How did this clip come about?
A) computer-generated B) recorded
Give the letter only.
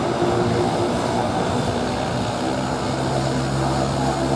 B